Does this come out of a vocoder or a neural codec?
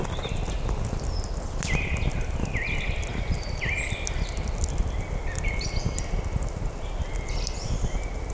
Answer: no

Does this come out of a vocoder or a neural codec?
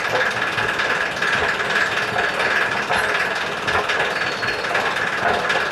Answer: no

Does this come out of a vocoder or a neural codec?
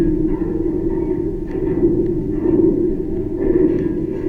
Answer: yes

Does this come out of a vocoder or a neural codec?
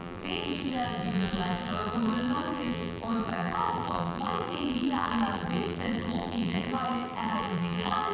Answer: yes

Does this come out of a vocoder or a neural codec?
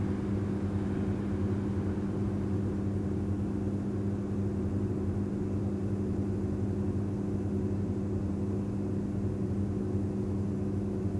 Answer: no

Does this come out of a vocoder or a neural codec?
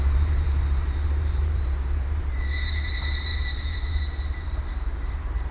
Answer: yes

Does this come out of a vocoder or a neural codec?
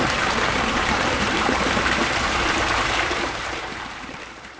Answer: yes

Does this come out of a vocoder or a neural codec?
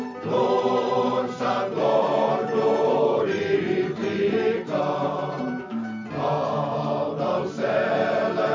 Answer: yes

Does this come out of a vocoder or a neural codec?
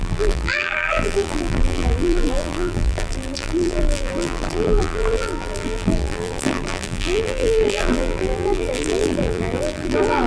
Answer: yes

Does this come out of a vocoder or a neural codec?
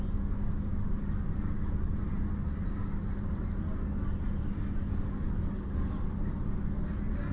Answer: no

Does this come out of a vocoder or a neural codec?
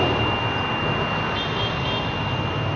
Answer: no